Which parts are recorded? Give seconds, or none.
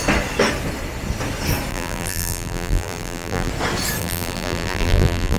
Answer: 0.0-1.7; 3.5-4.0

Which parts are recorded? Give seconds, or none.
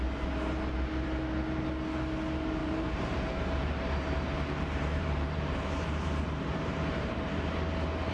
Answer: 0.0-2.6; 7.5-8.1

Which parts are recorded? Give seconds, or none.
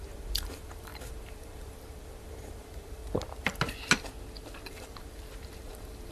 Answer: 3.0-4.7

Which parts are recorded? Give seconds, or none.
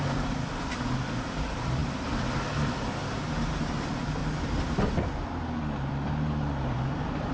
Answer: 3.0-3.6; 4.2-5.9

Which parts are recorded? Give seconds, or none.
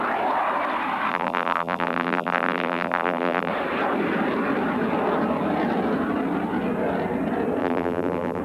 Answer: 0.0-1.1; 3.5-7.6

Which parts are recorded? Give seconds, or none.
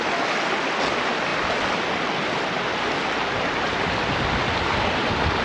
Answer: 0.0-5.4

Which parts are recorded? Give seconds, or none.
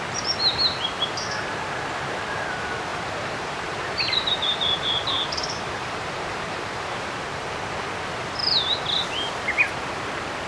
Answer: 0.0-2.9; 7.1-10.5